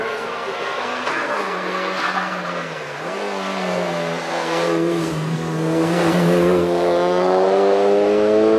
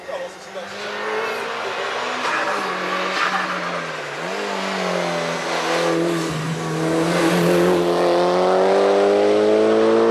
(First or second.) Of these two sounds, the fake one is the first